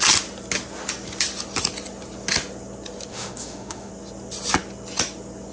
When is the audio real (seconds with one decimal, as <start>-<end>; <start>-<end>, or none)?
0.0-3.1; 3.9-5.5